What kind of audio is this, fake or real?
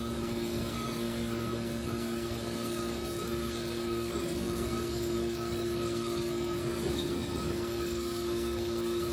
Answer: fake